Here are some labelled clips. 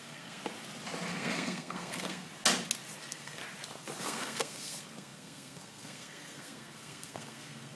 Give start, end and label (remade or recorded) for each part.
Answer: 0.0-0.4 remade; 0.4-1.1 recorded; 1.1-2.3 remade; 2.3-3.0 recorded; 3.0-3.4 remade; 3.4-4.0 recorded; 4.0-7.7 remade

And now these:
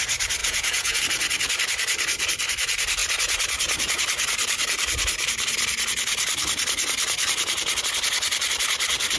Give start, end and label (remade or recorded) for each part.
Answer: 0.0-0.4 recorded; 0.4-1.0 remade; 1.0-9.2 recorded

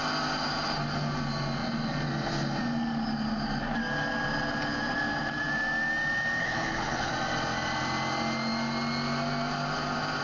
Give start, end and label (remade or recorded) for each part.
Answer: 0.0-6.4 recorded; 6.4-7.1 remade; 7.1-10.2 recorded

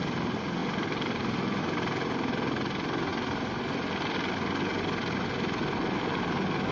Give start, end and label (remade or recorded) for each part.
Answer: 0.0-0.6 recorded; 0.6-1.6 remade; 1.6-3.1 recorded; 3.1-4.3 remade; 4.3-6.7 recorded

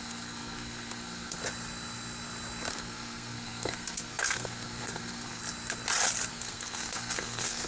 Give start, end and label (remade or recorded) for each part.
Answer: 0.0-1.4 remade; 1.4-2.7 recorded; 2.7-5.4 remade; 5.4-6.3 recorded; 6.3-7.7 remade

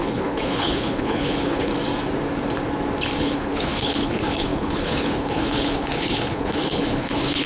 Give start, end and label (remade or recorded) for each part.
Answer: 0.0-1.7 remade; 1.7-3.2 recorded; 3.2-7.5 remade

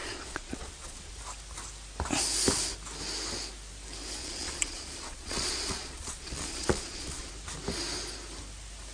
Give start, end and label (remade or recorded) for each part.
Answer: 0.0-1.1 remade; 1.1-4.2 recorded; 4.2-7.3 remade; 7.3-8.9 recorded